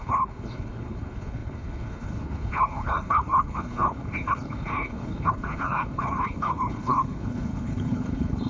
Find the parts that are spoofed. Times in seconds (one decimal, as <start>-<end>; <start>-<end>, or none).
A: 0.0-8.5